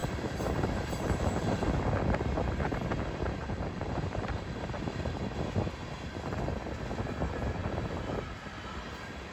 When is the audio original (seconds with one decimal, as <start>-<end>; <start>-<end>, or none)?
1.7-3.4; 5.0-9.3